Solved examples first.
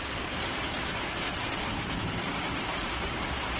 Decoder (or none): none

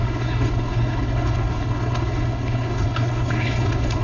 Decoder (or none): codec, HILCodec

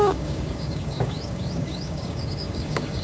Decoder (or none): codec, DAC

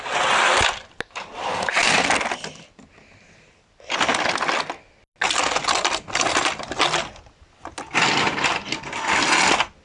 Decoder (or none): none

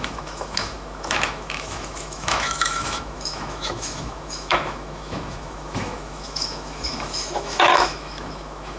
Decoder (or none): autoencoder, DAC-VAE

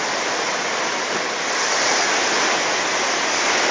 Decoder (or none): none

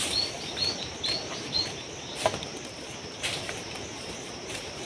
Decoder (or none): none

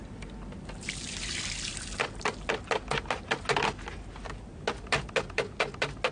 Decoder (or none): none